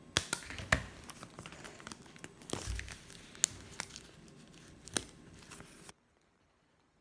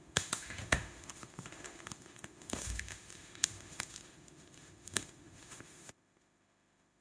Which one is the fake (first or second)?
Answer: second